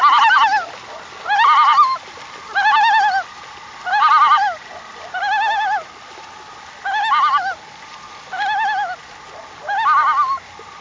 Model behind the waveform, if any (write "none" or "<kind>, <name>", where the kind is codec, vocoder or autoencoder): none